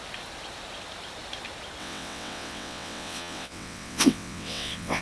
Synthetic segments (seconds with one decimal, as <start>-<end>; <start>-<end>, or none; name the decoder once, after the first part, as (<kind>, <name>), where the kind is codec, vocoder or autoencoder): 1.8-5.0 (vocoder, WaveNeXt)